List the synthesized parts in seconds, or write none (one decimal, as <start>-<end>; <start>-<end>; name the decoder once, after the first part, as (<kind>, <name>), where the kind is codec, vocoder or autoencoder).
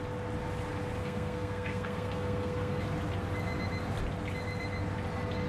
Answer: 1.0-2.8 (codec, SNAC)